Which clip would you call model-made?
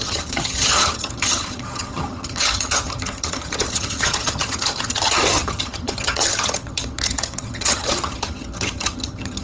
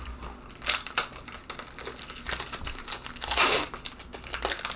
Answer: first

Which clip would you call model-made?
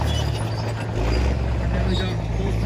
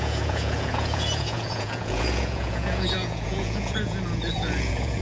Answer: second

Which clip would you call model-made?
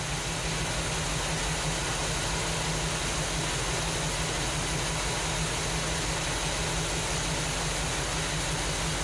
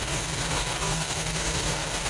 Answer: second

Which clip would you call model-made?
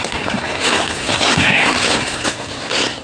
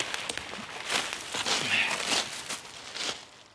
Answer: first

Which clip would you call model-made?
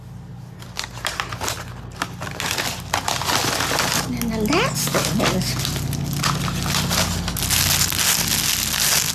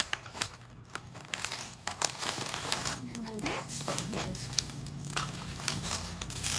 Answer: second